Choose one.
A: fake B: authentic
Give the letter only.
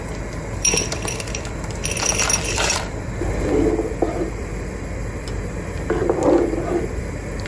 A